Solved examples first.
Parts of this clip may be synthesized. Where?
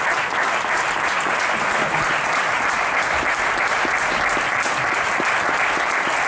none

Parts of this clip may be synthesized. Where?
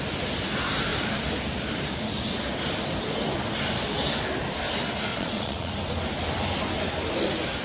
5.1-5.7 (vocoder, Vocos)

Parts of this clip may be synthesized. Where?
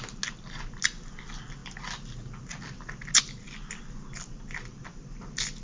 none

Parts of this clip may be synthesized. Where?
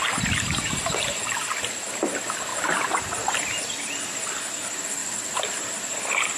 2.5-4.0 (vocoder, BigVGAN v2); 5.0-5.7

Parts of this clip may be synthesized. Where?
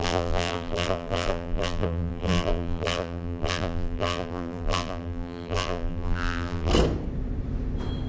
0.0-6.7 (vocoder, BigVGAN v2)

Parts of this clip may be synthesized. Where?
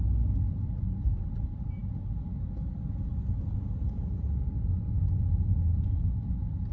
none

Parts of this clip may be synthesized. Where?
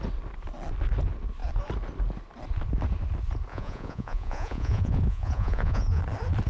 3.5-6.0 (vocoder, Vocos)